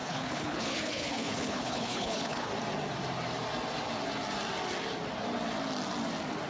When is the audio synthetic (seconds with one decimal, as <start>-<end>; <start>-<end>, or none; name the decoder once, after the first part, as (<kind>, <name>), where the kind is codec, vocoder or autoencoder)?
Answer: 0.0-2.5 (codec, HILCodec)